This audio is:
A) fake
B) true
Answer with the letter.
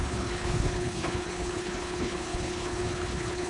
A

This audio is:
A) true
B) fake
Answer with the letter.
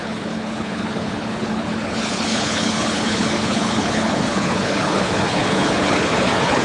B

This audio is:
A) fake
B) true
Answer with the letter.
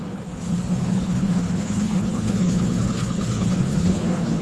A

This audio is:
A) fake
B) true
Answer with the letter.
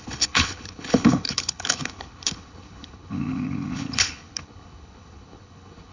A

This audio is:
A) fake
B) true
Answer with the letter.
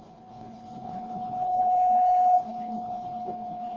A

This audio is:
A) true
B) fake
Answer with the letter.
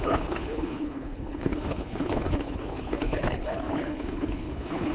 B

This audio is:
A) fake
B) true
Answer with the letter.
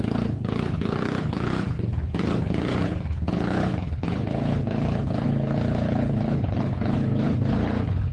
A